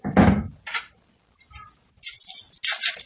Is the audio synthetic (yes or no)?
no